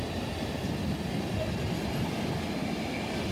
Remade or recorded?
recorded